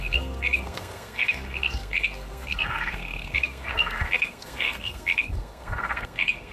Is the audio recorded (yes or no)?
no